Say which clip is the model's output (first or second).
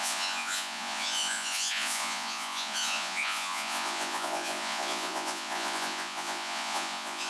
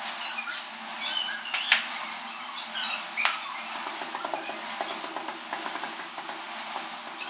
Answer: first